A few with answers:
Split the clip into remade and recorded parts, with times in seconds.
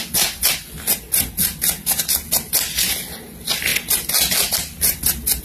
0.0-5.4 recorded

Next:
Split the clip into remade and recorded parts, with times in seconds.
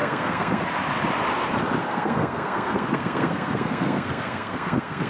0.0-0.6 remade; 0.6-1.8 recorded; 1.8-5.1 remade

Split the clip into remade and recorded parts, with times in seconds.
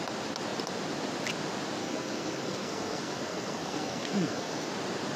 0.0-1.8 recorded; 1.8-4.7 remade; 4.7-5.2 recorded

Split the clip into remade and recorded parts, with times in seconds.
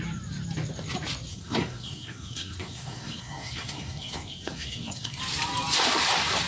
0.0-1.3 recorded; 1.3-5.2 remade; 5.2-6.5 recorded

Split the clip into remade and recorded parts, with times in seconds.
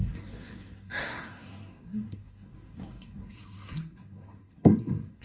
0.0-5.2 remade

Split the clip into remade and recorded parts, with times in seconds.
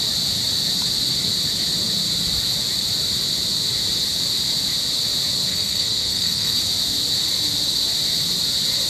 0.0-5.5 recorded; 5.5-6.6 remade; 6.6-8.9 recorded